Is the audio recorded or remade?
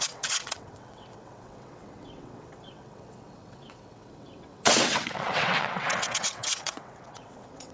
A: remade